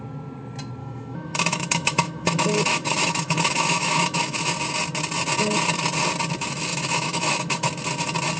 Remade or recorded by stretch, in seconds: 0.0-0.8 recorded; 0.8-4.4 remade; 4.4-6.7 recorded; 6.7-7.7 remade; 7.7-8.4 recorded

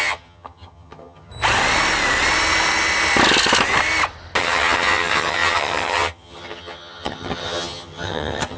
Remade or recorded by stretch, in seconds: 0.0-1.3 remade; 1.3-4.4 recorded; 4.4-8.6 remade

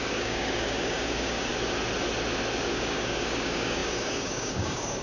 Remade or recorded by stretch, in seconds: 0.0-1.5 remade; 1.5-2.7 recorded; 2.7-5.0 remade

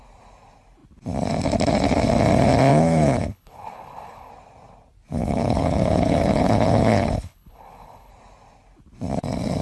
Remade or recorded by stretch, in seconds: 0.0-2.7 recorded; 2.7-4.3 remade; 4.3-5.2 recorded; 5.2-8.1 remade; 8.1-9.6 recorded